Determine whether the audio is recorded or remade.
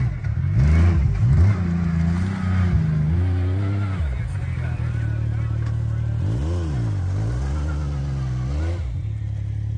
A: recorded